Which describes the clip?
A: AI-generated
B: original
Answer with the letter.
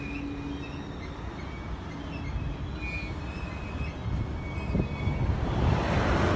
B